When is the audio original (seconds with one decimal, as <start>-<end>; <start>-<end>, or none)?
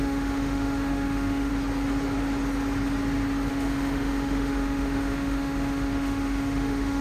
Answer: 1.5-3.5